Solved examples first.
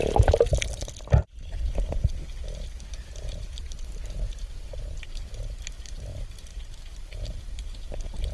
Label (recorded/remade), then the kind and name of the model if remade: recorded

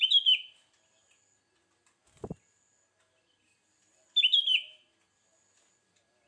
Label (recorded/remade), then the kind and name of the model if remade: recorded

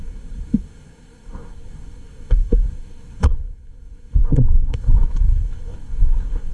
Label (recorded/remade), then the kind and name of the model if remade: remade, codec, SNAC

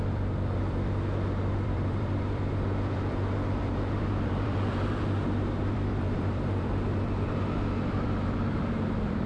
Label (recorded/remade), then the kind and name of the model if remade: remade, vocoder, BigVGAN v2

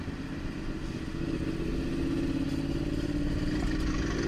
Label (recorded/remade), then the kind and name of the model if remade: recorded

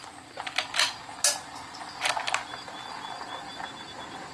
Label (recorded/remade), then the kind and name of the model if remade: recorded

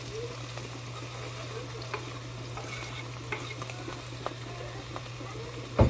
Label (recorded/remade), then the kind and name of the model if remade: recorded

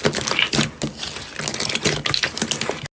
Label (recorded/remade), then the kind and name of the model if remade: recorded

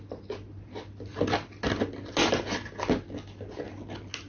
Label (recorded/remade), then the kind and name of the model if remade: recorded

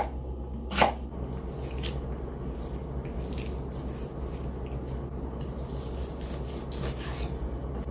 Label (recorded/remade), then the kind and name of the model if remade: recorded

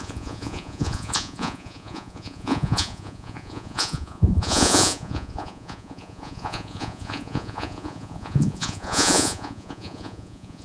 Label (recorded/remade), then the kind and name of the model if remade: remade, vocoder, Vocos